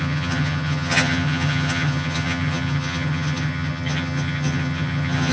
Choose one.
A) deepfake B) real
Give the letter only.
A